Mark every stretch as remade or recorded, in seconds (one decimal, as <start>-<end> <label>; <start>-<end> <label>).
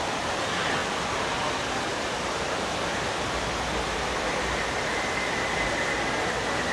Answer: 0.0-6.7 recorded